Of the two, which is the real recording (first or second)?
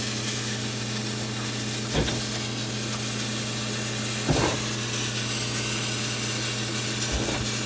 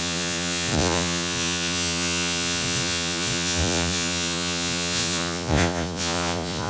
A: first